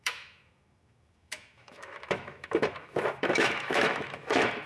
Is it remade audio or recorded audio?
remade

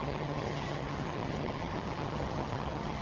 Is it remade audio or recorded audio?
remade